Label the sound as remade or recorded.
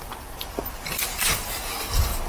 recorded